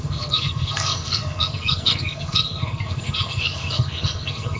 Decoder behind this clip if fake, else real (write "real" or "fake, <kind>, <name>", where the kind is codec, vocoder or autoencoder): fake, codec, SNAC